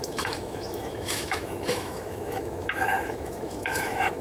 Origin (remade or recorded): remade